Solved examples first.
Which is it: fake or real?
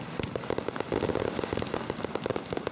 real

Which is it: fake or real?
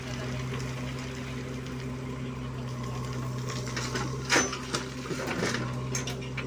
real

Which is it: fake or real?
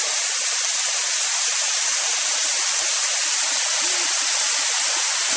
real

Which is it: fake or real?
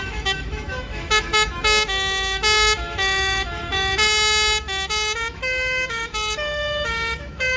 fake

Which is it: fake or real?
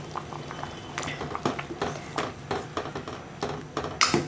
real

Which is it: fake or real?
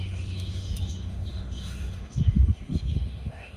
fake